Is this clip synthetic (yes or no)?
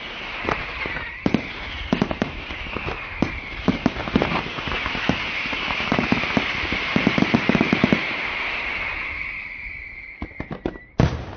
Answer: yes